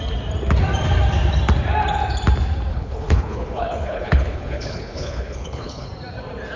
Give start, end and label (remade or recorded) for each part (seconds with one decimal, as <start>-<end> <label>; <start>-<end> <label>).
0.0-2.7 recorded; 2.7-5.9 remade; 5.9-6.6 recorded